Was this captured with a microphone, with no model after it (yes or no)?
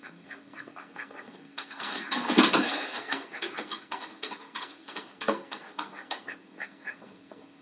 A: no